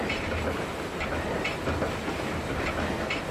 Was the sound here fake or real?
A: real